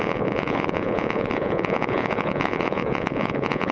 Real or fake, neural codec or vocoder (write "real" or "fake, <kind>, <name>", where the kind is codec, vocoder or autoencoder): fake, vocoder, Vocos